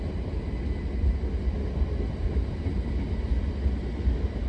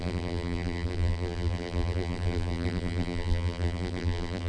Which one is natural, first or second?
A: first